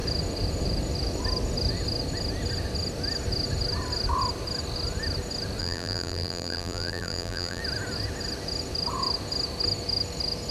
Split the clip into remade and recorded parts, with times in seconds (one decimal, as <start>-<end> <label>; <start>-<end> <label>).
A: 0.0-5.6 recorded; 5.6-7.6 remade; 7.6-10.5 recorded

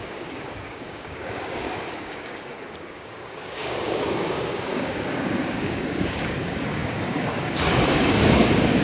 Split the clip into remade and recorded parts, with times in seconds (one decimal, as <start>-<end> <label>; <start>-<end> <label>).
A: 0.0-8.8 remade

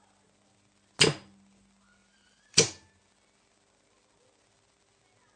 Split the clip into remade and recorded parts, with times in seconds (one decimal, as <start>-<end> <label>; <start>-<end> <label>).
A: 0.0-2.0 recorded; 2.0-3.0 remade; 3.0-5.4 recorded

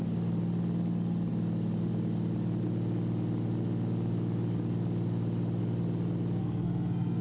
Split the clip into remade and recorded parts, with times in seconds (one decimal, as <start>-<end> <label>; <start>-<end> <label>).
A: 0.0-6.4 recorded; 6.4-7.2 remade

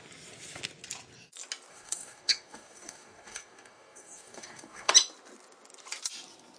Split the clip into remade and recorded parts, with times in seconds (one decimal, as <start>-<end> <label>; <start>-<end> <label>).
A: 0.0-1.7 recorded; 1.7-4.9 remade; 4.9-6.6 recorded

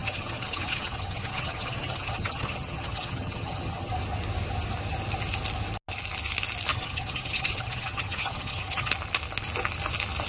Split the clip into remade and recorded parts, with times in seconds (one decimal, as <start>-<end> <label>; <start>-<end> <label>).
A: 0.0-3.9 remade; 3.9-6.7 recorded; 6.7-8.9 remade; 8.9-10.3 recorded

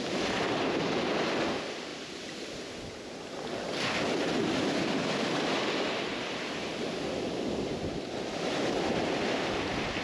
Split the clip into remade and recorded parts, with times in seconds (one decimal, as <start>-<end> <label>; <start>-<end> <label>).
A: 0.0-10.0 recorded

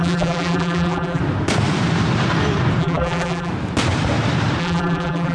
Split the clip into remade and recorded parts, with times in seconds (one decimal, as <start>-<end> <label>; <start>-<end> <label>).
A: 0.0-1.2 remade; 1.2-2.8 recorded; 2.8-3.5 remade; 3.5-4.6 recorded; 4.6-5.3 remade